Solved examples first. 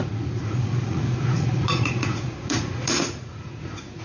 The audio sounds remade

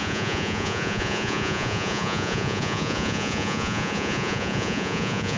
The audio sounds remade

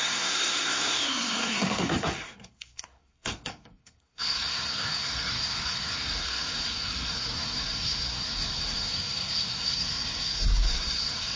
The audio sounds remade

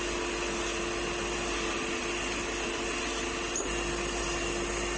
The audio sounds recorded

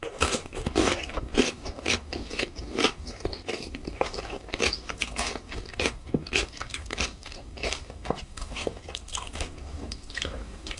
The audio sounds remade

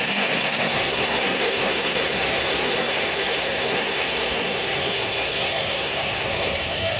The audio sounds remade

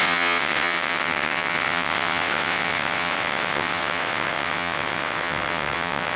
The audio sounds remade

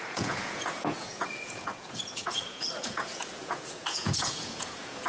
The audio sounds remade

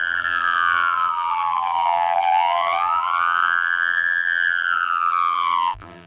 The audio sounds remade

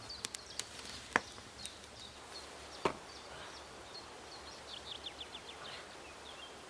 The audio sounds recorded